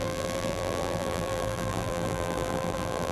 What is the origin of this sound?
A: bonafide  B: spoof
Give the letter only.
B